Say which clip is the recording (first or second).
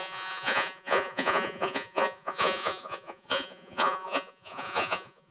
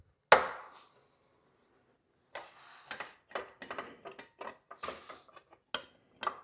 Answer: second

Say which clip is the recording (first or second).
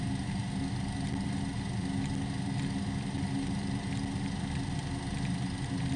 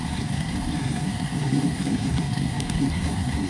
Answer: first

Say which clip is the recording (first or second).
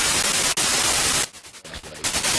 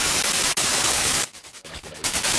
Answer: first